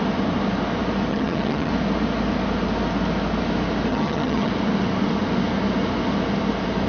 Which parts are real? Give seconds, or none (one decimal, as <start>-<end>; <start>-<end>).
0.0-1.1; 1.7-3.9; 4.5-6.9